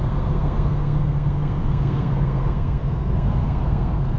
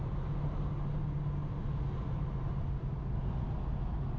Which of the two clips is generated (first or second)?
first